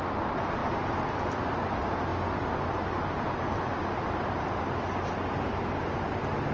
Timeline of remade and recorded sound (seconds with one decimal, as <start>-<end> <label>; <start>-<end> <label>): 0.0-6.5 recorded